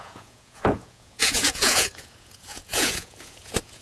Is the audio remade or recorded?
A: remade